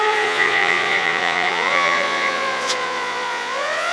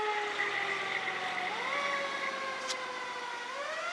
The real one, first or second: second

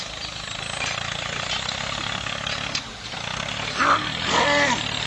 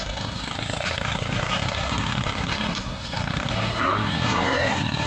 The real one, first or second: first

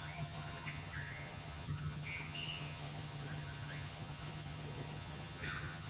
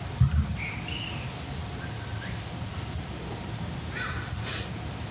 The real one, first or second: second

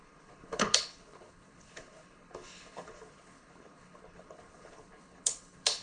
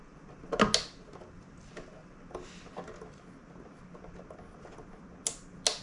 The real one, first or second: second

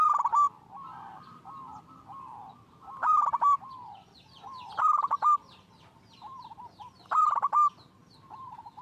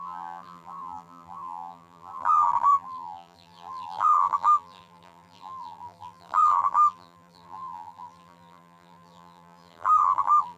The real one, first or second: first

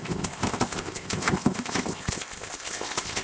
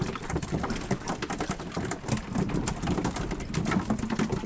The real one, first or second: second